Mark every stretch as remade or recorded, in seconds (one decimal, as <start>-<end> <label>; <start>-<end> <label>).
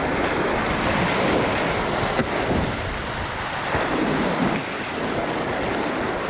0.0-4.6 recorded; 4.6-5.7 remade; 5.7-6.3 recorded